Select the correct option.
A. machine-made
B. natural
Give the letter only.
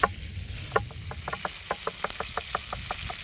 B